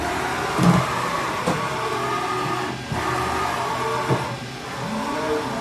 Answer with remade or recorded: recorded